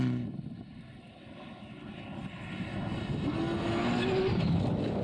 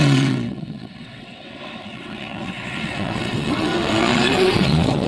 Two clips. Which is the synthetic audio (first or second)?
second